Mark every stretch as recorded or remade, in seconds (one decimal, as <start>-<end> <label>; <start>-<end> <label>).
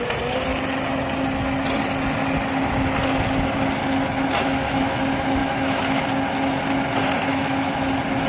0.0-4.4 recorded; 4.4-5.0 remade; 5.0-5.4 recorded; 5.4-6.0 remade; 6.0-7.3 recorded; 7.3-7.8 remade; 7.8-8.3 recorded